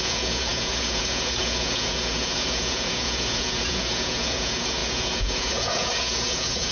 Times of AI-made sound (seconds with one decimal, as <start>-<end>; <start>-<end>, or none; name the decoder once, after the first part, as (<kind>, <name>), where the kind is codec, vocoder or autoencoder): 0.0-6.7 (vocoder, Vocos)